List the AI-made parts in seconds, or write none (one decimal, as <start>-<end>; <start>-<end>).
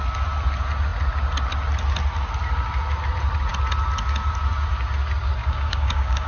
5.4-6.3